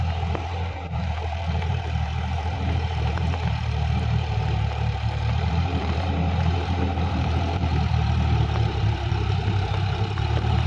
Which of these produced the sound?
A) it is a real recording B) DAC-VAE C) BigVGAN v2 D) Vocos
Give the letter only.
C